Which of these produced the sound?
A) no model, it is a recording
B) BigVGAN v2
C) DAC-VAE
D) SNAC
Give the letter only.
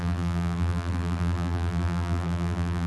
B